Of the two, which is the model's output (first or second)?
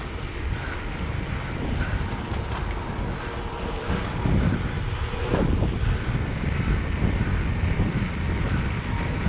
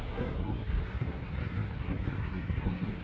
second